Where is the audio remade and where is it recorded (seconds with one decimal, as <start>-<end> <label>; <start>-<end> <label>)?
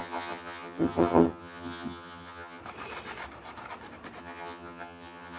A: 0.0-2.6 remade; 2.6-4.2 recorded; 4.2-5.4 remade